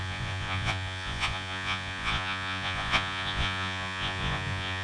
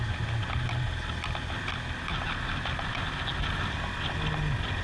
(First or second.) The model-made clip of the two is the first